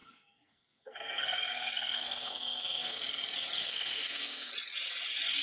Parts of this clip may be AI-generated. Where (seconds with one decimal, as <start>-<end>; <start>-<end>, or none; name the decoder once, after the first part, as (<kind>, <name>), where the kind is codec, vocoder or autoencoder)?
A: 0.0-3.0 (codec, SNAC); 3.6-4.5

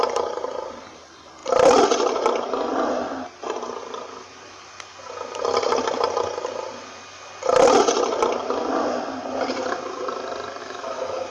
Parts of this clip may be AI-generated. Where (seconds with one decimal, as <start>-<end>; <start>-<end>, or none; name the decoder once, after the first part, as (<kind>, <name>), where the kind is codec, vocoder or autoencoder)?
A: 10.6-11.3 (autoencoder, DAC-VAE)

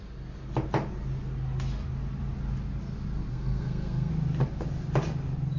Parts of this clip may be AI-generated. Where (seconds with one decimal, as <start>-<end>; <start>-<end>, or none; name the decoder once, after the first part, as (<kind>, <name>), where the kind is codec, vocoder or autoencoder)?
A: 3.3-4.1 (codec, SNAC)

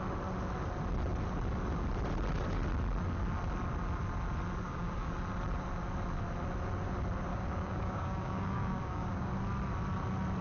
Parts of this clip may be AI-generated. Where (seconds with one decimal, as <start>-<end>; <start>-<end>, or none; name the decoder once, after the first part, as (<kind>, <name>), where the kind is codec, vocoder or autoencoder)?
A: 4.6-5.1 (codec, DAC); 7.3-9.3

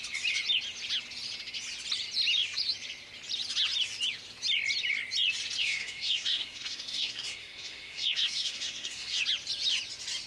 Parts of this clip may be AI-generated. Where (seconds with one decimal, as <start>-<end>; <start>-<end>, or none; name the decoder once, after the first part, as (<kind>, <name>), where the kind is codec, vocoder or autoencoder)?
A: 5.6-9.2 (codec, SNAC)